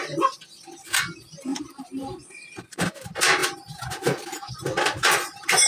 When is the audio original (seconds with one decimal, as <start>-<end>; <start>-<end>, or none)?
0.0-1.5; 2.9-5.7